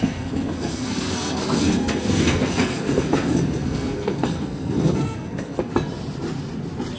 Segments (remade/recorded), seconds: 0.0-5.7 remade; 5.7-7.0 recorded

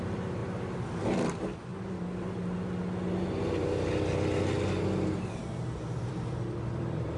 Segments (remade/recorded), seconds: 0.0-1.7 remade; 1.7-6.0 recorded; 6.0-7.2 remade

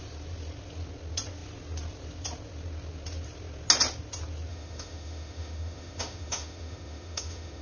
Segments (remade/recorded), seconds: 0.0-4.5 recorded; 4.5-7.6 remade

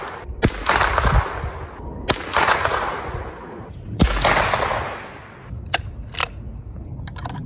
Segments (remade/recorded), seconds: 0.0-2.3 recorded; 2.3-4.1 remade; 4.1-7.5 recorded

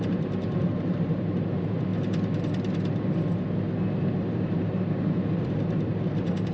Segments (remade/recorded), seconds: 0.0-1.9 remade; 1.9-4.0 recorded; 4.0-6.5 remade

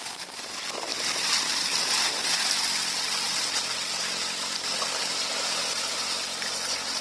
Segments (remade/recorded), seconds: 0.0-7.0 recorded